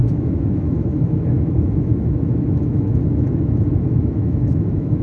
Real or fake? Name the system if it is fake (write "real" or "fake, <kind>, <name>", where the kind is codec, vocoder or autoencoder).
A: fake, autoencoder, DAC-VAE